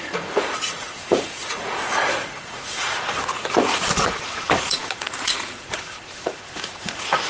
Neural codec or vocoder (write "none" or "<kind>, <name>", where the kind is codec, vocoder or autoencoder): vocoder, Vocos